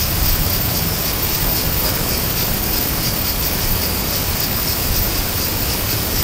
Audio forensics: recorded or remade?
remade